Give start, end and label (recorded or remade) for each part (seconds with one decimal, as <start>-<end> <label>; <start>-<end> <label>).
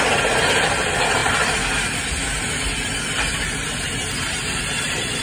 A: 0.0-5.2 recorded